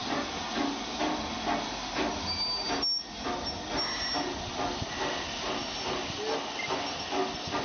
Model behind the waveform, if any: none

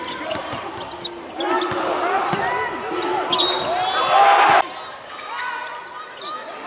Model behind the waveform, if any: none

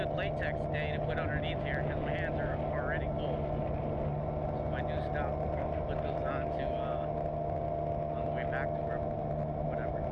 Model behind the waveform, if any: none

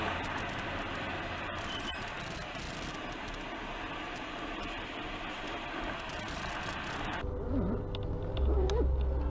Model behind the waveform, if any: none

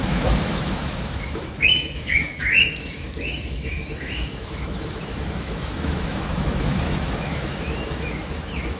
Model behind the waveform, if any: autoencoder, DAC-VAE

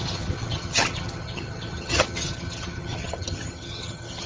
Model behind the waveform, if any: vocoder, HiFi-GAN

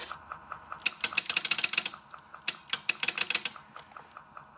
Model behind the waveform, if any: none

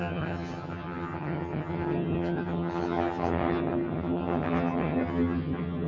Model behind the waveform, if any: vocoder, HiFi-GAN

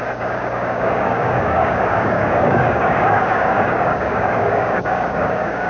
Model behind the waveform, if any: codec, DAC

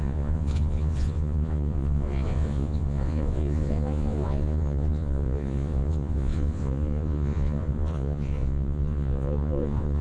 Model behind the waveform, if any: vocoder, Vocos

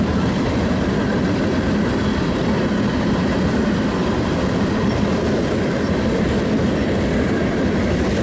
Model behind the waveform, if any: vocoder, BigVGAN v2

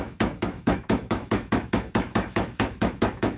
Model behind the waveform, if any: autoencoder, DAC-VAE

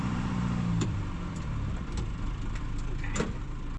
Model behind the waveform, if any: vocoder, BigVGAN v2